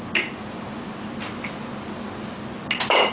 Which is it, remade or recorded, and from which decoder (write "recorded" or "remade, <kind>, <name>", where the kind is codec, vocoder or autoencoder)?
recorded